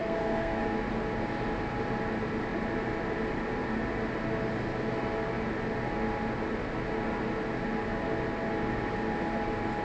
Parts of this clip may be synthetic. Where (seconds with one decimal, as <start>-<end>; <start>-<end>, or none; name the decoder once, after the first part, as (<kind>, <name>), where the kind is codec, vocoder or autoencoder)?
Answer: 0.0-0.6 (codec, SNAC)